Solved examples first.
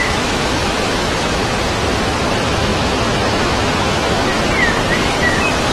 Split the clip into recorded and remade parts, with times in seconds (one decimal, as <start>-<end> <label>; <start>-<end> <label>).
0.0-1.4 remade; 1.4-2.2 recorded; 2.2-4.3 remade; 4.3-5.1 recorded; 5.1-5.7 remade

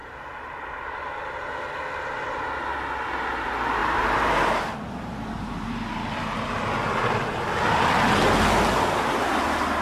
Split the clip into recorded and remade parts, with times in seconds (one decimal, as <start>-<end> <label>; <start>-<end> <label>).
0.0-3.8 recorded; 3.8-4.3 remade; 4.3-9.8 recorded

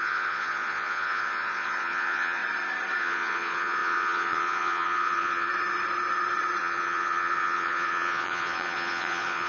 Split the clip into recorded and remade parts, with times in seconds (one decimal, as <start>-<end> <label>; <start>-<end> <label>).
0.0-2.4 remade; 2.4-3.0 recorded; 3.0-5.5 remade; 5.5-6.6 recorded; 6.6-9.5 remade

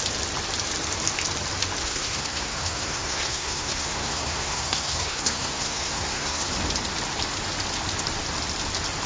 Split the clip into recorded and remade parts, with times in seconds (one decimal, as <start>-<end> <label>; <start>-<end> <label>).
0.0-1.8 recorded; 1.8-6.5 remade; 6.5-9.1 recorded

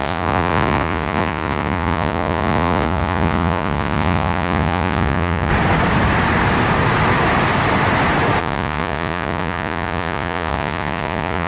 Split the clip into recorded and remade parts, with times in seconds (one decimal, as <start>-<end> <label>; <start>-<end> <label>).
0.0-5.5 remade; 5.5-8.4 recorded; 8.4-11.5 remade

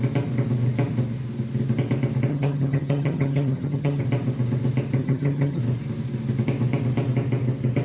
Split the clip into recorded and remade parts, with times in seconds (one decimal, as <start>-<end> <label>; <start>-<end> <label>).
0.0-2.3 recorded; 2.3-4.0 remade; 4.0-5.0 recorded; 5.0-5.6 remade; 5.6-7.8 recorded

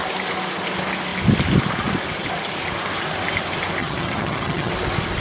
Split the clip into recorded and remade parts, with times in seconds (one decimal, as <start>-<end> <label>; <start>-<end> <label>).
0.0-3.8 recorded; 3.8-4.7 remade; 4.7-5.2 recorded

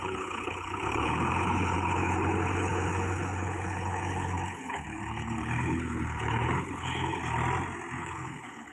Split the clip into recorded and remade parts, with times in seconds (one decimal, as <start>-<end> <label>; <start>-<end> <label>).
0.0-7.2 remade; 7.2-8.0 recorded; 8.0-8.7 remade